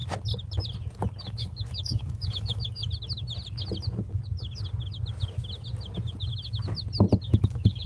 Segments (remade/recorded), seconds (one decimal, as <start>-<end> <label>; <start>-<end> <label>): 0.0-1.2 recorded; 1.2-2.8 remade; 2.8-7.2 recorded; 7.2-7.9 remade